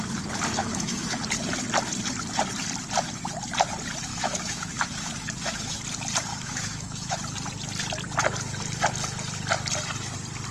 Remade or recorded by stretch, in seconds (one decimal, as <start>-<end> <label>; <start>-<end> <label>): 0.0-0.6 recorded; 0.6-1.2 remade; 1.2-4.1 recorded; 4.1-5.8 remade; 5.8-6.3 recorded; 6.3-7.2 remade; 7.2-10.5 recorded